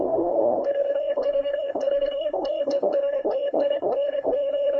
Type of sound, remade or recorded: remade